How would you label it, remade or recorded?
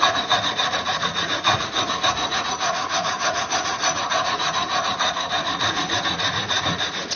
remade